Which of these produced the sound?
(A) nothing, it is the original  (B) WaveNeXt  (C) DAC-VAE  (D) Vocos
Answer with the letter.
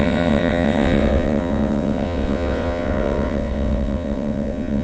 B